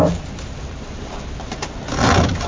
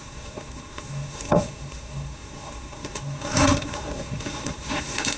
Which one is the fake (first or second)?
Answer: second